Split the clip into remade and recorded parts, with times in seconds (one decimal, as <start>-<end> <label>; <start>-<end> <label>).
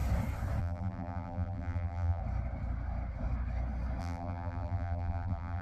0.0-0.6 recorded; 0.6-2.2 remade; 2.2-4.0 recorded; 4.0-5.6 remade